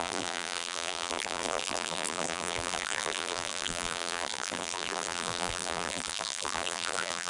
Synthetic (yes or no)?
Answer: yes